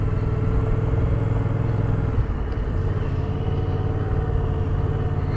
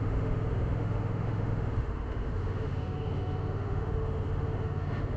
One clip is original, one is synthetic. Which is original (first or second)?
first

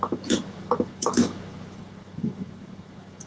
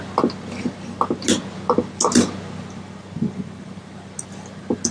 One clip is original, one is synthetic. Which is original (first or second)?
second